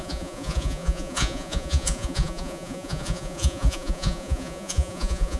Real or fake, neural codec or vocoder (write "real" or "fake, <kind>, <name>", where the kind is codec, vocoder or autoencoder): fake, vocoder, Vocos